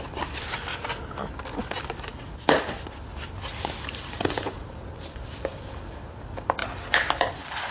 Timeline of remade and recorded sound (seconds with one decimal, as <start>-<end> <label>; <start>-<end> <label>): 0.0-0.7 remade; 0.7-1.3 recorded; 1.3-6.6 remade; 6.6-7.3 recorded; 7.3-7.7 remade